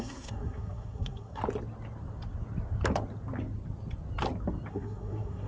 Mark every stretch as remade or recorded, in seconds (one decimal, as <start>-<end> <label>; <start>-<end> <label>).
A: 0.0-1.4 remade; 1.4-4.7 recorded; 4.7-5.5 remade

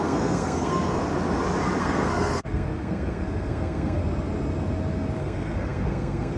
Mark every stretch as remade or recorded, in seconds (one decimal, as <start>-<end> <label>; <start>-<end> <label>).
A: 0.0-1.0 remade; 1.0-1.8 recorded; 1.8-4.0 remade; 4.0-5.2 recorded; 5.2-6.4 remade

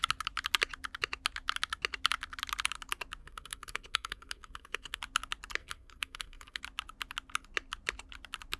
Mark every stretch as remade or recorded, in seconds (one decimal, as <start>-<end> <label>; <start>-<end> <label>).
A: 0.0-3.2 recorded; 3.2-5.0 remade; 5.0-5.6 recorded; 5.6-6.6 remade; 6.6-8.6 recorded

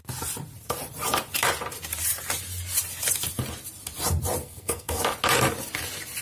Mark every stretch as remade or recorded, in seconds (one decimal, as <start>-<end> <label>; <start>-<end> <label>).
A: 0.0-4.4 recorded; 4.4-5.0 remade; 5.0-6.2 recorded

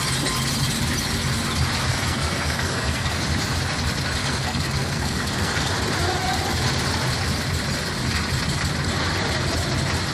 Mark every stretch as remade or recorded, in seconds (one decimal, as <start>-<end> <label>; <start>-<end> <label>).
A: 0.0-1.9 recorded; 1.9-3.2 remade; 3.2-4.2 recorded; 4.2-5.7 remade; 5.7-10.1 recorded

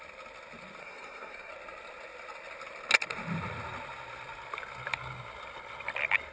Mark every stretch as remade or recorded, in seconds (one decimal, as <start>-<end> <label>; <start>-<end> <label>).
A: 0.0-0.8 recorded; 0.8-1.5 remade; 1.5-6.3 recorded

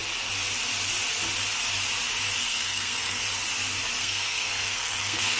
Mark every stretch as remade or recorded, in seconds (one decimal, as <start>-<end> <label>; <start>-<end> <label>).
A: 0.0-2.4 recorded; 2.4-3.2 remade; 3.2-4.0 recorded; 4.0-5.4 remade